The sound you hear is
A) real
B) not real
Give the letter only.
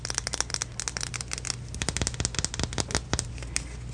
A